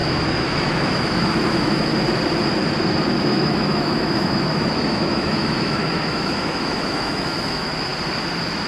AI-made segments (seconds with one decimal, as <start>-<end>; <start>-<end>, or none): 0.0-1.9; 3.2-7.9